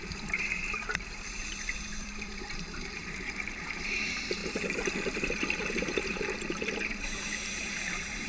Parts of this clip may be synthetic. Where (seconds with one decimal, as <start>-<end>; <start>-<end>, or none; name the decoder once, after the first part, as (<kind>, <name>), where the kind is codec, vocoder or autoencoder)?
0.0-4.4 (vocoder, BigVGAN v2); 5.2-8.3